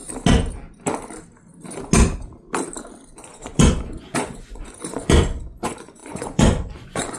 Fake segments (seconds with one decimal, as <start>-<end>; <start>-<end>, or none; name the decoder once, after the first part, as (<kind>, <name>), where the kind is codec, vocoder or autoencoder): 3.1-7.2 (vocoder, Vocos)